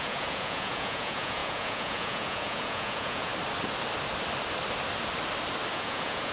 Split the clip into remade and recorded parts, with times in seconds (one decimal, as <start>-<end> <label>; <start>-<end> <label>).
0.0-3.3 remade; 3.3-5.7 recorded; 5.7-6.3 remade